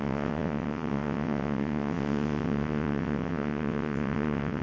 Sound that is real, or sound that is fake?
fake